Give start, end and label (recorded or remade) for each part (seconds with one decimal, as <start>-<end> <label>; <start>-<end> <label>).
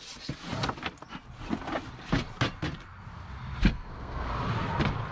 0.0-3.7 recorded; 3.7-4.3 remade; 4.3-5.1 recorded